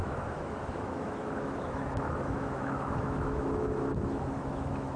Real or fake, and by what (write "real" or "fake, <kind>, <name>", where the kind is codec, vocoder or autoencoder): fake, autoencoder, DAC-VAE